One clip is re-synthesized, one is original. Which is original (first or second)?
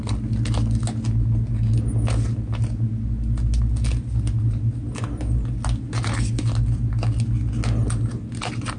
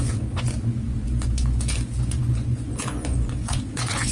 first